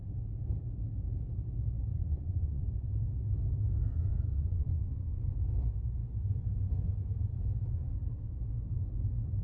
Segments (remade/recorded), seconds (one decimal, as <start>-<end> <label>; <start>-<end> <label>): 0.0-1.9 recorded; 1.9-2.7 remade; 2.7-3.9 recorded; 3.9-5.3 remade; 5.3-9.4 recorded